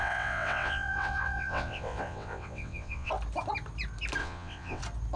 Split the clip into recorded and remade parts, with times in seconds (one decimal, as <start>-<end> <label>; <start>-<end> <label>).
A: 0.0-3.1 remade; 3.1-4.2 recorded; 4.2-4.8 remade; 4.8-5.2 recorded